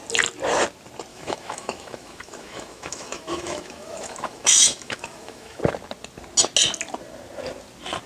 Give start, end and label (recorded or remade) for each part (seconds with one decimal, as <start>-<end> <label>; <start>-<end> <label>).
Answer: 0.0-1.1 recorded; 1.1-5.6 remade; 5.6-8.1 recorded

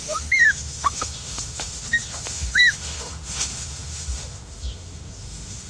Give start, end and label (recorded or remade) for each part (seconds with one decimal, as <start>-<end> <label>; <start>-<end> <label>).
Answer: 0.0-5.7 remade

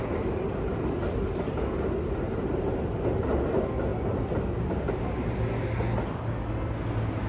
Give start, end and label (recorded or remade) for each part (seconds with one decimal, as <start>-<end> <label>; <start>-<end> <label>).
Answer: 0.0-7.3 recorded

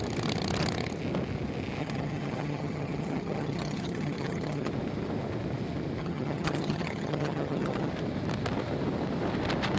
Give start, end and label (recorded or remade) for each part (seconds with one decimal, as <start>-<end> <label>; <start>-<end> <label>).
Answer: 0.0-1.8 recorded; 1.8-4.7 remade; 4.7-6.0 recorded; 6.0-7.9 remade; 7.9-9.8 recorded

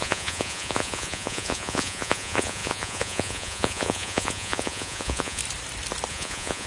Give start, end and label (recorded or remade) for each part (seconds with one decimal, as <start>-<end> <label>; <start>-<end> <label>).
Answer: 0.0-5.4 remade; 5.4-6.1 recorded; 6.1-6.7 remade

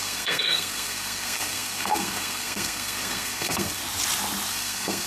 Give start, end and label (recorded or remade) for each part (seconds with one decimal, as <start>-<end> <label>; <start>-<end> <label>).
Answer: 0.0-3.8 remade; 3.8-4.5 recorded; 4.5-5.1 remade

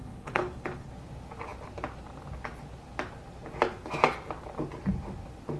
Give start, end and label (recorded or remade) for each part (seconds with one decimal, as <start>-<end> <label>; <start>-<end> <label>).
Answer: 0.0-0.9 remade; 0.9-5.6 recorded

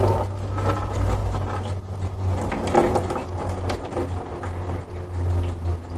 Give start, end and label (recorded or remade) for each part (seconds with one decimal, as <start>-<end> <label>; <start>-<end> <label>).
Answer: 0.0-6.0 recorded